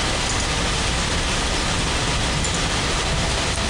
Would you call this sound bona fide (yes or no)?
yes